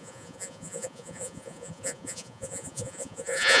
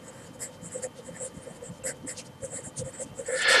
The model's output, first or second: first